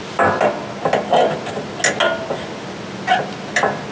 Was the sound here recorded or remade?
recorded